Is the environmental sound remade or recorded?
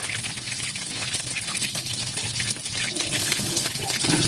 remade